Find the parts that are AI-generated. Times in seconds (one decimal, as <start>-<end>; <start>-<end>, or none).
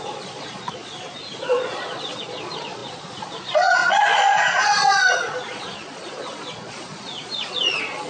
0.0-8.1